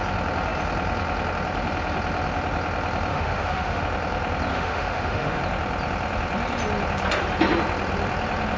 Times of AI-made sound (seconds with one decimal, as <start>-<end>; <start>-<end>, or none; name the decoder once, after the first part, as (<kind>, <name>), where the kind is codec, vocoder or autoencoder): 3.1-3.8 (autoencoder, DAC-VAE); 4.5-5.4

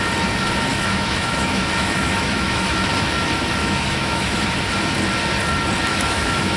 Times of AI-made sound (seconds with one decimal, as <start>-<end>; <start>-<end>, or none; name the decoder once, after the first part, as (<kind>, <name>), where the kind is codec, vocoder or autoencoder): 0.7-2.9 (autoencoder, DAC-VAE); 3.6-4.4; 5.9-6.6

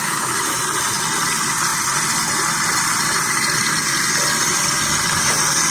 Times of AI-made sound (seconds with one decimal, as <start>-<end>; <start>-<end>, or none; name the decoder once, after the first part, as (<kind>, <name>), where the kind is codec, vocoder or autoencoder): 0.0-0.6 (autoencoder, DAC-VAE)

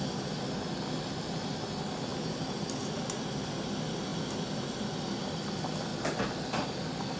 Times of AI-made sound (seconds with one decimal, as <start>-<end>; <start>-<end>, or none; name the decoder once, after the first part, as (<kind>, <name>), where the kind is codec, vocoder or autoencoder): none